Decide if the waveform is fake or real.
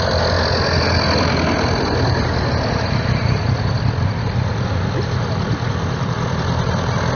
real